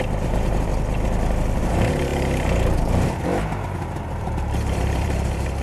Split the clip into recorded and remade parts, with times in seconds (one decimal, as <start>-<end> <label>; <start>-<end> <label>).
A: 0.0-0.7 remade; 0.7-1.6 recorded; 1.6-5.6 remade